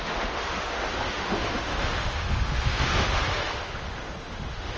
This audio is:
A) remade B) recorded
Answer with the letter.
A